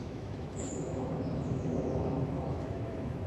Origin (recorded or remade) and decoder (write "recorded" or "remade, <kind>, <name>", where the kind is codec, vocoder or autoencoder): remade, autoencoder, DAC-VAE